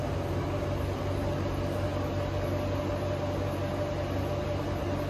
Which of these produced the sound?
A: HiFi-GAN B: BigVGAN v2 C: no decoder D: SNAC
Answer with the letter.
C